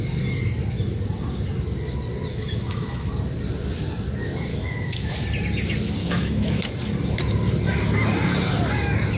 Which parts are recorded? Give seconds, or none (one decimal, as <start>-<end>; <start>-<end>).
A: 0.0-2.3; 3.1-4.5; 5.1-6.0; 6.7-9.2